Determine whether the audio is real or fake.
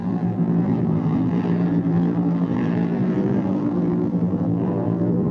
fake